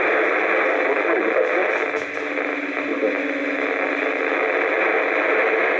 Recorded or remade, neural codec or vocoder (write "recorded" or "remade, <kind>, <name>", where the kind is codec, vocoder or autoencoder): recorded